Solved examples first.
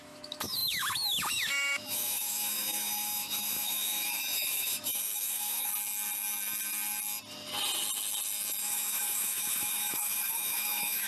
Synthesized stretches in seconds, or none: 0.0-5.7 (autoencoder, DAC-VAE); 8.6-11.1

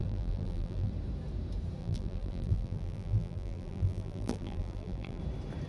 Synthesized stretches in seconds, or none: 0.0-0.9 (vocoder, BigVGAN v2); 1.8-5.2

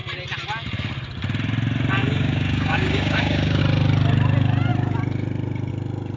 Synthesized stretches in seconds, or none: 2.0-3.6 (codec, DAC)

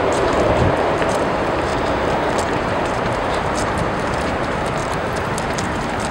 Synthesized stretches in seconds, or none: 0.0-1.7 (vocoder, BigVGAN v2); 2.6-4.8; 5.4-6.1

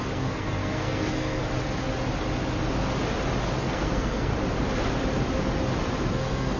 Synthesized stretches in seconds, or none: 0.0-1.4 (codec, SNAC); 3.6-4.3; 6.1-6.6

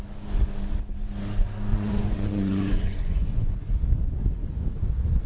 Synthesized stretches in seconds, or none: 1.7-3.8 (vocoder, Vocos)

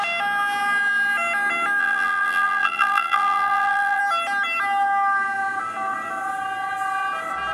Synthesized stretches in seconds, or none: 1.8-4.0 (vocoder, BigVGAN v2)

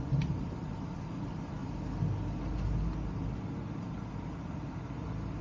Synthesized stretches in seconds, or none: none